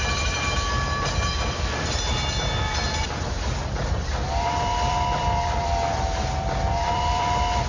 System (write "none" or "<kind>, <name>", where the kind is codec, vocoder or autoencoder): vocoder, BigVGAN v2